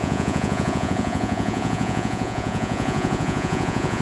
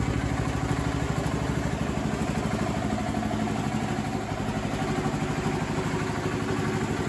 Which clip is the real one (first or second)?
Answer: second